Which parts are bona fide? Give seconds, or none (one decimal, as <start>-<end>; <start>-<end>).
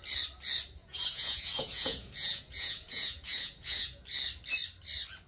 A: 0.0-0.8; 4.0-5.3